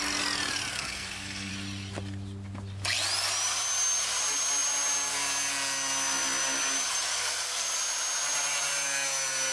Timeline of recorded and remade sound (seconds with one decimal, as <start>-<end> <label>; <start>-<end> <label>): 0.0-0.7 recorded; 0.7-1.5 remade; 1.5-7.1 recorded; 7.1-7.8 remade; 7.8-9.5 recorded